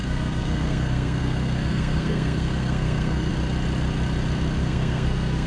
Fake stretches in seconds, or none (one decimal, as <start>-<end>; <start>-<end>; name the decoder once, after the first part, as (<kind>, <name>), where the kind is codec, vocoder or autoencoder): 0.0-3.3 (codec, SNAC); 4.6-5.5